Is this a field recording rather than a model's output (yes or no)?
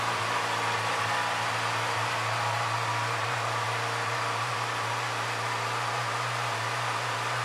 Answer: yes